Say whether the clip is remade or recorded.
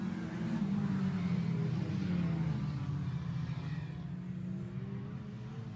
recorded